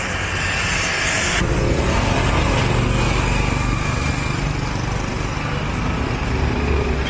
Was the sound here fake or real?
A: real